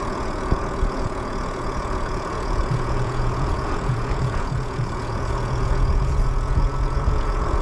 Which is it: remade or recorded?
remade